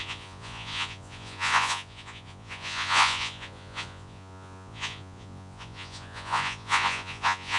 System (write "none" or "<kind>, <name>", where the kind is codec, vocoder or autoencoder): vocoder, Vocos